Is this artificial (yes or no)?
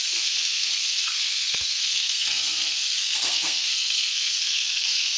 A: yes